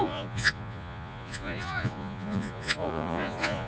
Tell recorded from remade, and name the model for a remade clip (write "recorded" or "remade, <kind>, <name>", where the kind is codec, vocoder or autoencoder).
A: remade, vocoder, Vocos